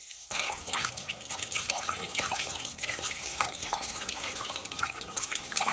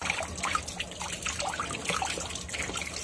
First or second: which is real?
second